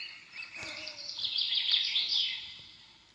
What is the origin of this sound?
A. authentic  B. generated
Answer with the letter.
B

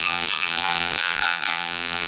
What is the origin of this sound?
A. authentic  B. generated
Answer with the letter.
B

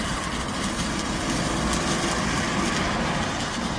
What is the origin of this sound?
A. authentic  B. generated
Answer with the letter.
A